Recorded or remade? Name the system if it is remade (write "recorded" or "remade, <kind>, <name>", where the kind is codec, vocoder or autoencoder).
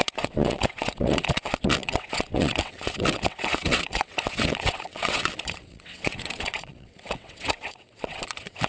remade, vocoder, WaveNeXt